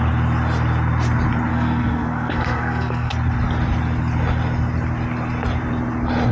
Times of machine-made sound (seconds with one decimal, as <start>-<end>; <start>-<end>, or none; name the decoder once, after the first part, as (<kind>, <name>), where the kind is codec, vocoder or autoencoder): 1.5-3.1 (codec, SNAC)